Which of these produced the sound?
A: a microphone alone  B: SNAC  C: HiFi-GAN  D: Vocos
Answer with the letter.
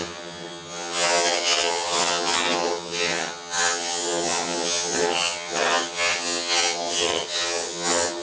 C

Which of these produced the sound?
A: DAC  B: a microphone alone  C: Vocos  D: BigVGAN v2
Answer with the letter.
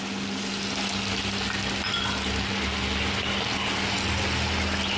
B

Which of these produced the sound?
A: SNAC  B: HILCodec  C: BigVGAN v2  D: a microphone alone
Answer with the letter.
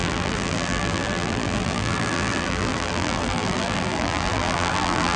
C